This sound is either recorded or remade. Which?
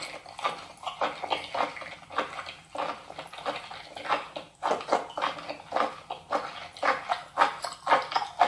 recorded